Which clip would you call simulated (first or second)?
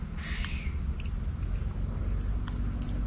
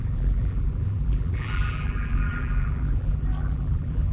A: second